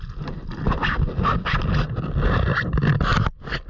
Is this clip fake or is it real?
real